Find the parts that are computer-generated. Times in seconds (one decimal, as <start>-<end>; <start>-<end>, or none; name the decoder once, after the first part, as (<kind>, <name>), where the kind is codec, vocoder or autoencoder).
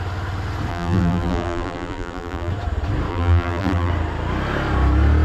0.7-2.5 (vocoder, BigVGAN v2); 3.1-3.9